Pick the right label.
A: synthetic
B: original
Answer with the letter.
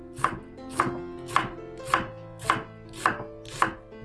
B